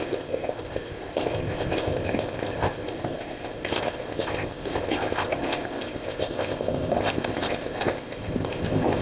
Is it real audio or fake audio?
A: fake